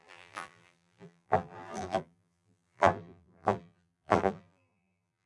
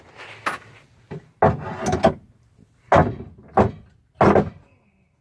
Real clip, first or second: second